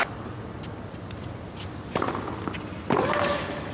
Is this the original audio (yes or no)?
yes